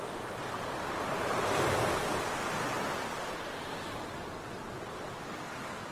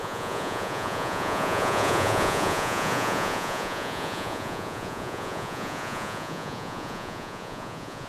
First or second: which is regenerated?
second